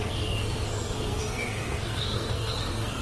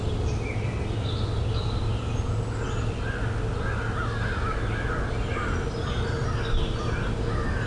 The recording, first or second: second